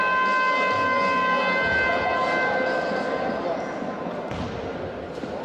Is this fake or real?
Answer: real